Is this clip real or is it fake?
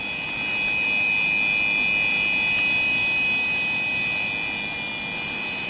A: real